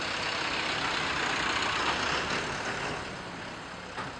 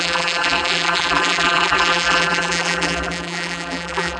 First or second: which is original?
first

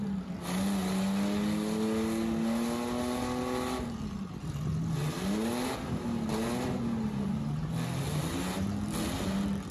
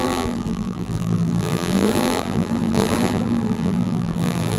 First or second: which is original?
first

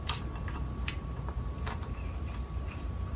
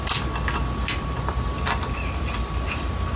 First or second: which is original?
second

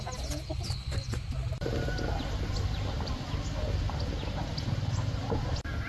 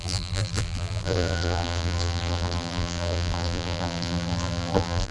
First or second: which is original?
first